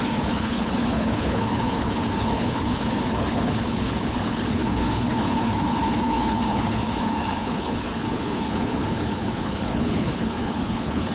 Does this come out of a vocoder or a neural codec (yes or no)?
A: yes